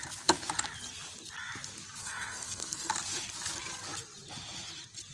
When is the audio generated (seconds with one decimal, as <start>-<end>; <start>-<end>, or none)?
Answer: 2.0-2.9